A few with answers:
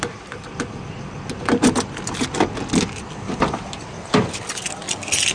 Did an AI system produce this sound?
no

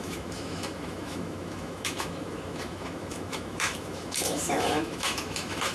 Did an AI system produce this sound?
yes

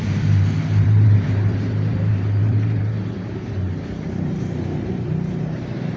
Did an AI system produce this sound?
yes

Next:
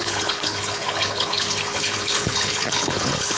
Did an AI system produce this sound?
yes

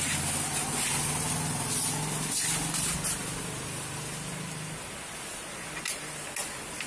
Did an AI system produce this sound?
no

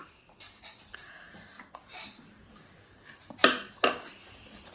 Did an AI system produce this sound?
no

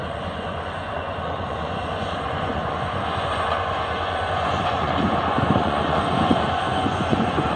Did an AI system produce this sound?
yes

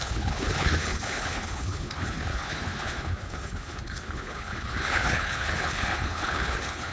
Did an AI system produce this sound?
yes